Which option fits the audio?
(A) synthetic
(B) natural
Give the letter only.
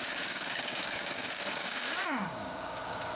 A